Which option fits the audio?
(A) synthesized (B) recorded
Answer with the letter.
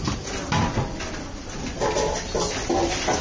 B